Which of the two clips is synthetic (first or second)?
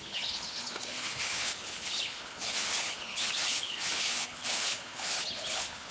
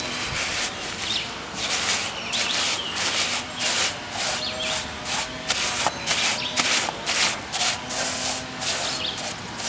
first